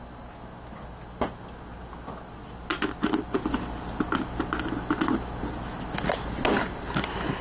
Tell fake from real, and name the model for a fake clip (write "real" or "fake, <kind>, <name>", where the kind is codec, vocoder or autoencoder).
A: real